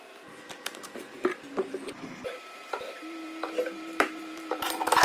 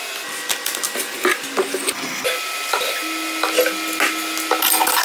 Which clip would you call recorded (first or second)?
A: second